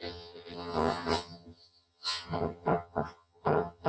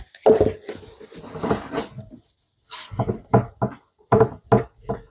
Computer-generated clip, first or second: first